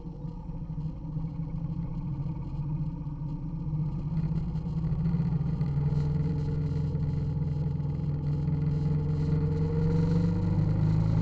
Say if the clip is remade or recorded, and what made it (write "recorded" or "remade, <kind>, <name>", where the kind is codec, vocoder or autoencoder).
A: recorded